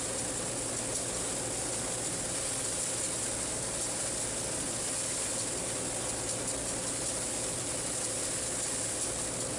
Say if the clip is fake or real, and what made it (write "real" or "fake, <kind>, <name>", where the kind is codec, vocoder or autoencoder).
real